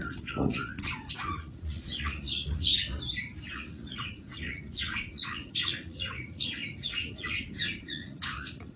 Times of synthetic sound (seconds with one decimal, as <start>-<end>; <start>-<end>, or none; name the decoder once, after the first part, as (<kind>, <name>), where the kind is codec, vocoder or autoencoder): 0.0-2.7 (vocoder, Vocos); 3.5-8.8